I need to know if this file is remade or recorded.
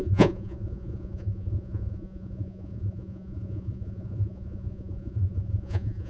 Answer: remade